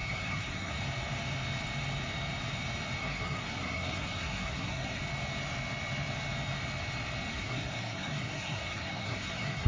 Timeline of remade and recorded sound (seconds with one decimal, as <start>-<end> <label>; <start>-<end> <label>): 0.0-0.7 remade; 0.7-3.0 recorded; 3.0-5.0 remade; 5.0-7.3 recorded; 7.3-9.7 remade